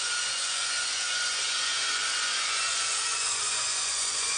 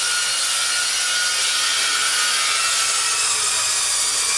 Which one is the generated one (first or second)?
first